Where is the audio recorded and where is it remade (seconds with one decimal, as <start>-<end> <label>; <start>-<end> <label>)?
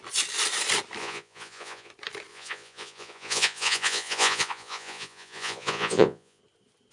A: 0.0-1.0 recorded; 1.0-1.9 remade; 1.9-2.3 recorded; 2.3-6.4 remade; 6.4-6.9 recorded